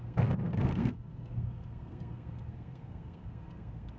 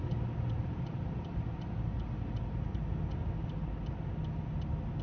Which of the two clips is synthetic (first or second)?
first